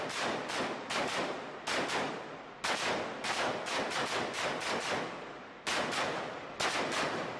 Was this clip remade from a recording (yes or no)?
no